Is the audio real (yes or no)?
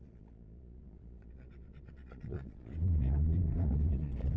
no